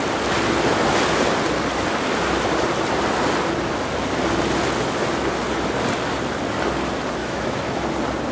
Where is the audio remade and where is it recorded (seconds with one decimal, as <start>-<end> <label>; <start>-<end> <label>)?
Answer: 0.0-7.2 recorded; 7.2-7.8 remade; 7.8-8.3 recorded